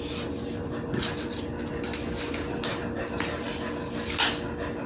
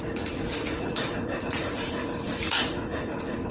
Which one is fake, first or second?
second